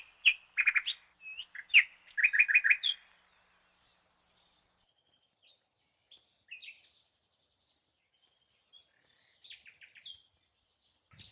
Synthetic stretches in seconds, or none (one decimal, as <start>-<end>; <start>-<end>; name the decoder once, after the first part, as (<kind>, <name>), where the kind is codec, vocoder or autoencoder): none